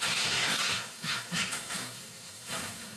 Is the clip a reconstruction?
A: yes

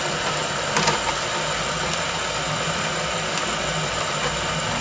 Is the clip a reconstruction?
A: no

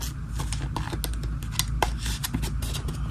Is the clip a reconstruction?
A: no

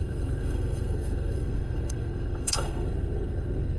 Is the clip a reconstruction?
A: yes